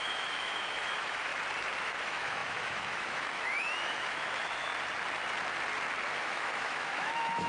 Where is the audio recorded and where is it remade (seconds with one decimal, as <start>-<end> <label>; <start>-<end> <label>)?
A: 0.0-1.3 remade; 1.3-1.8 recorded; 1.8-4.7 remade; 4.7-6.2 recorded; 6.2-7.5 remade